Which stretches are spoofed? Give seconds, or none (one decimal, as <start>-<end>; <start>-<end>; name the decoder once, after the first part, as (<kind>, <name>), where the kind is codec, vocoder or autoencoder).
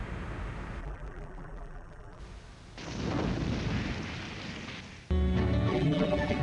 0.8-2.2 (vocoder, BigVGAN v2); 5.7-6.4